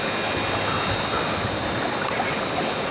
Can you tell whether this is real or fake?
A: real